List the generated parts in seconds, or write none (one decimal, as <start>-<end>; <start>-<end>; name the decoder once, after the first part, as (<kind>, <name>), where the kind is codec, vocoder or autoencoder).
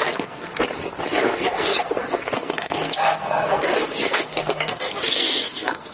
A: 0.0-0.5 (codec, SNAC); 1.1-5.9